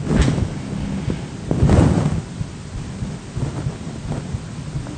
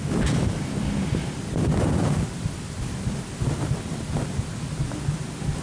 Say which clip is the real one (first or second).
first